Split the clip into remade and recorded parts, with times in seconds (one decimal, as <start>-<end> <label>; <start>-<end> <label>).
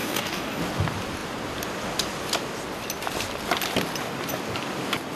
0.0-0.6 remade; 0.6-5.2 recorded